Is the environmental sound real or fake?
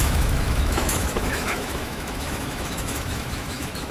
fake